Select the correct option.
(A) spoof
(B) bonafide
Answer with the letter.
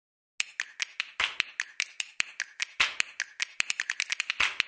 B